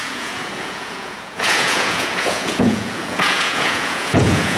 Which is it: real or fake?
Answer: fake